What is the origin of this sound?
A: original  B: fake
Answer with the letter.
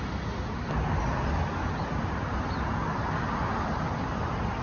A